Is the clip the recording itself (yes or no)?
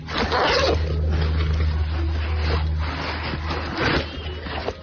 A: yes